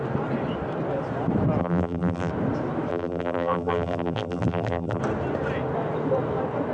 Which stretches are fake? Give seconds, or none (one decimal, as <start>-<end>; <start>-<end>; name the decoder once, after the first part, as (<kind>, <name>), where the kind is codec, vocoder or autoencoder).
1.6-2.3 (vocoder, BigVGAN v2); 2.9-5.0